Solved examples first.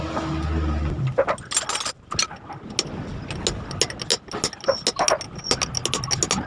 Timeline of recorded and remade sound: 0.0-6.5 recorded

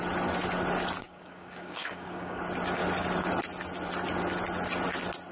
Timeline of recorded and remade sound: 0.0-1.0 recorded; 1.0-2.4 remade; 2.4-5.3 recorded

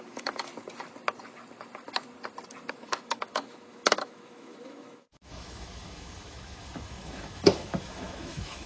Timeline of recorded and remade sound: 0.0-0.5 remade; 0.5-2.7 recorded; 2.7-8.7 remade